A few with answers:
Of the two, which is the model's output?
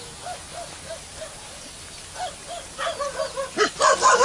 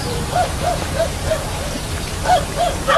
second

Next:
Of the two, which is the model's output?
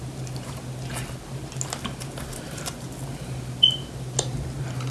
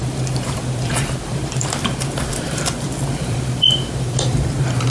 second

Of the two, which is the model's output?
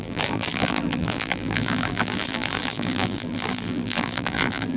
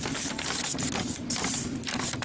first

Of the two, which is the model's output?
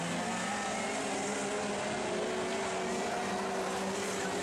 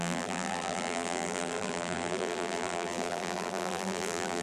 second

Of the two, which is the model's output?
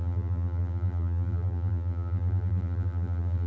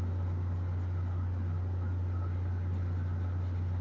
first